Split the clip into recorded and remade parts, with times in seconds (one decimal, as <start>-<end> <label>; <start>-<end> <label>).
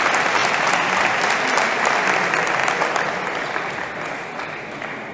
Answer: 0.0-5.1 recorded